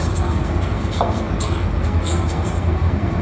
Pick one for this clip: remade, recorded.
remade